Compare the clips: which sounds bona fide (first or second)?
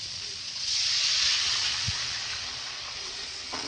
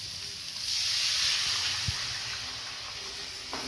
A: second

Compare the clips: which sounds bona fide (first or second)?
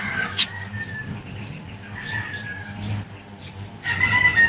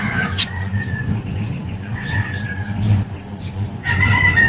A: first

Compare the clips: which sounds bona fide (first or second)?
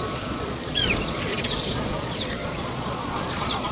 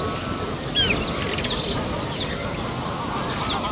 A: second